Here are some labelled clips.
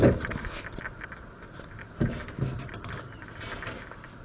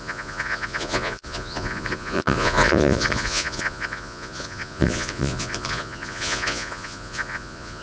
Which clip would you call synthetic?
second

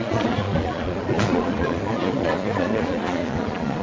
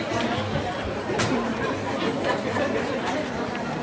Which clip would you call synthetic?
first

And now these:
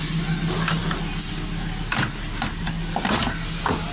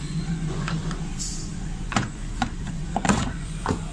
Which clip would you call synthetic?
second